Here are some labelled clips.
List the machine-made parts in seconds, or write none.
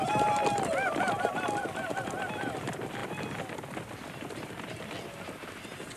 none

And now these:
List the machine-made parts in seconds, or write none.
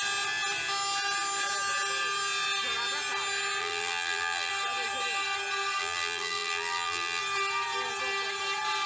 3.6-4.5 (vocoder, BigVGAN v2); 5.8-7.2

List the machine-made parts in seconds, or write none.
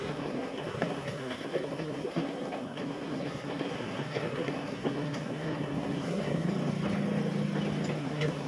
0.0-6.5 (codec, SNAC); 8.0-8.5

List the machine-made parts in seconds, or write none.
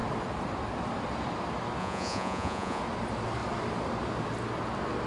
1.8-2.8 (vocoder, Vocos)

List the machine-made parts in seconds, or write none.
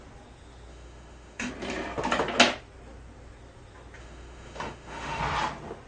0.7-1.5 (autoencoder, DAC-VAE); 4.0-5.2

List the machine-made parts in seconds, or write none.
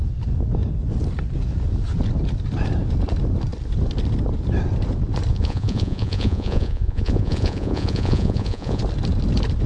5.3-8.8 (vocoder, Vocos)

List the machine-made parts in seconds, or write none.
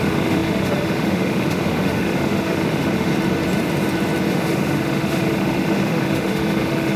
0.0-3.1 (autoencoder, DAC-VAE); 4.3-7.0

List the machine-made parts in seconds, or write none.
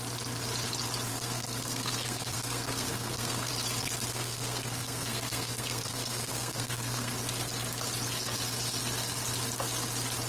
1.1-3.5 (codec, SNAC); 4.1-7.1